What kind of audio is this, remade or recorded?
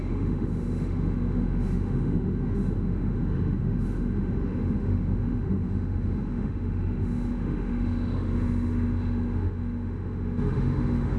remade